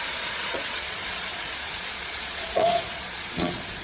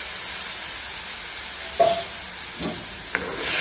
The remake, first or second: first